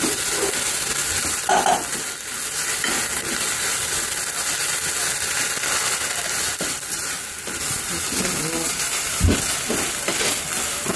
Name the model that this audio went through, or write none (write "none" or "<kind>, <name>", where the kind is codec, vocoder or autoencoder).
none